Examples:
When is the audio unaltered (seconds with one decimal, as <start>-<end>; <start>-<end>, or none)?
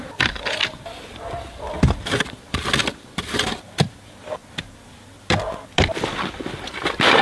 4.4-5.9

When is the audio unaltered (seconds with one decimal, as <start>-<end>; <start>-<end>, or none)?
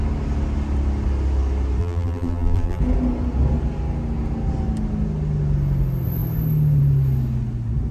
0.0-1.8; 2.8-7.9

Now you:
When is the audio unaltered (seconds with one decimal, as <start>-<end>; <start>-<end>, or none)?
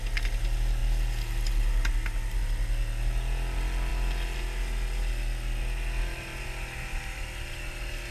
0.0-8.1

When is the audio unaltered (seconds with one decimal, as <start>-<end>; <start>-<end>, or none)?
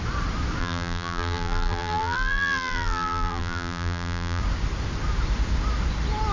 0.0-0.6; 4.4-6.3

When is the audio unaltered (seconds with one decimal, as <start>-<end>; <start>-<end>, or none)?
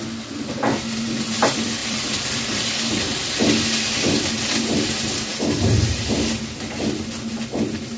0.0-1.8; 2.9-5.3; 5.8-8.0